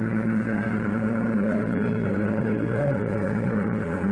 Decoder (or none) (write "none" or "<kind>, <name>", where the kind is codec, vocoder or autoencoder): vocoder, Vocos